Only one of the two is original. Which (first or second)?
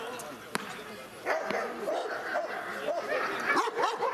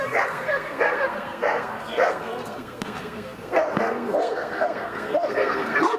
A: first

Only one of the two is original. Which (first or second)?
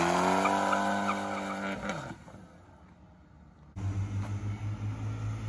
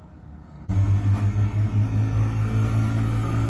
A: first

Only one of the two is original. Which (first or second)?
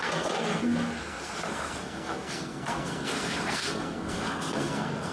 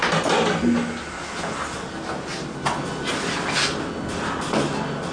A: second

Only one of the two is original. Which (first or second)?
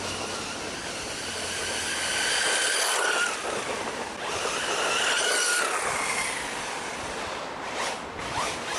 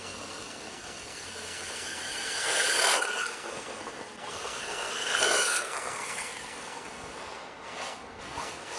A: first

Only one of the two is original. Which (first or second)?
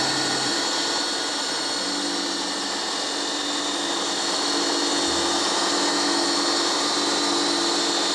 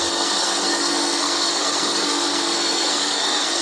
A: first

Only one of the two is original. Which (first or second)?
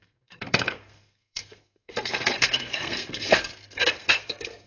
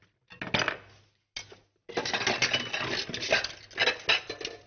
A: second